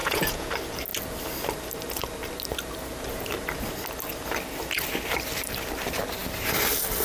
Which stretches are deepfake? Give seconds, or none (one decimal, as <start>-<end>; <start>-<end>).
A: 0.0-0.5